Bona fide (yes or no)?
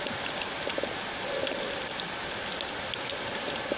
yes